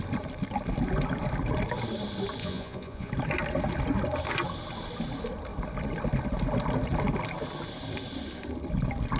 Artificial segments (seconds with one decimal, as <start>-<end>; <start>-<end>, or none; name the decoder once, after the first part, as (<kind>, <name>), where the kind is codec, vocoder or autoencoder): 2.4-3.1 (vocoder, Vocos)